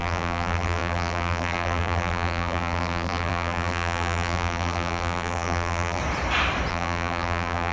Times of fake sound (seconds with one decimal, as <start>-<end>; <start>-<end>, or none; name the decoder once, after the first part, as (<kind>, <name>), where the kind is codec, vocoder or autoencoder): 0.0-6.0 (vocoder, BigVGAN v2); 6.7-7.7